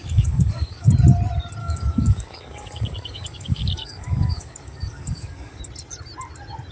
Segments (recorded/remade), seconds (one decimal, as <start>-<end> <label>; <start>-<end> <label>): 0.0-0.9 remade; 0.9-1.6 recorded; 1.6-5.6 remade; 5.6-6.7 recorded

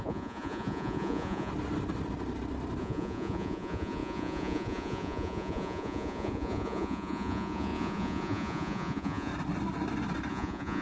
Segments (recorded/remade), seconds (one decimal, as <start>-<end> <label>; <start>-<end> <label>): 0.0-1.5 remade; 1.5-2.8 recorded; 2.8-9.3 remade; 9.3-10.3 recorded; 10.3-10.8 remade

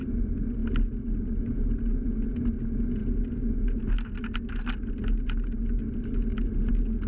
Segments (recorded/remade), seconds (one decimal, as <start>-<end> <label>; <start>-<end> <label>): 0.0-7.1 recorded

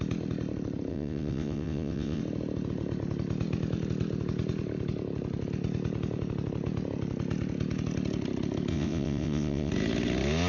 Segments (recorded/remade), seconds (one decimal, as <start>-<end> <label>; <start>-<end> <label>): 0.0-0.9 recorded; 0.9-2.2 remade; 2.2-8.7 recorded; 8.7-9.7 remade; 9.7-10.5 recorded

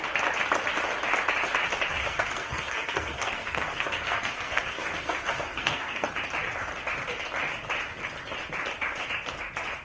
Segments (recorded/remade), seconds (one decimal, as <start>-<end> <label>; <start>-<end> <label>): 0.0-2.0 recorded; 2.0-6.1 remade; 6.1-9.8 recorded

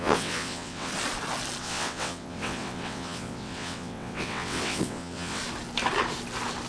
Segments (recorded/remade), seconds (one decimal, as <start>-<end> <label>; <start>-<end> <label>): 0.0-0.9 remade; 0.9-1.6 recorded; 1.6-5.4 remade; 5.4-6.7 recorded

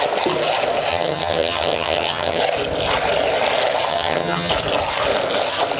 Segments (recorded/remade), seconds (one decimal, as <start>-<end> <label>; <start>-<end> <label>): 0.0-0.9 recorded; 0.9-2.4 remade; 2.4-3.9 recorded; 3.9-4.5 remade; 4.5-5.8 recorded

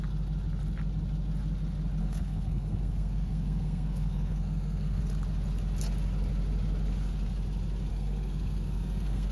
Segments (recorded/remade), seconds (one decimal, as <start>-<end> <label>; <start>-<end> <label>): 0.0-2.0 recorded; 2.0-5.0 remade; 5.0-7.9 recorded; 7.9-9.3 remade